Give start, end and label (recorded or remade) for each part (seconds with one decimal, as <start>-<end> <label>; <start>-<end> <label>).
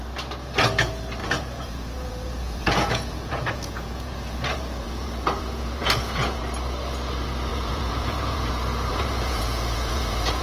0.0-1.2 recorded; 1.2-6.4 remade; 6.4-7.5 recorded; 7.5-8.5 remade; 8.5-8.9 recorded; 8.9-10.4 remade